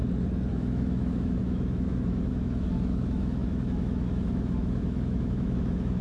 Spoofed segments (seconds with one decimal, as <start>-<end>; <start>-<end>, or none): 0.5-6.0